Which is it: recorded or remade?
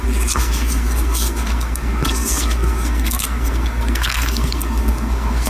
remade